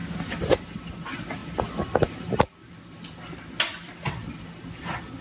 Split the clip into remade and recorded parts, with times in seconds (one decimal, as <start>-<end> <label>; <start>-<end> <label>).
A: 0.0-5.2 recorded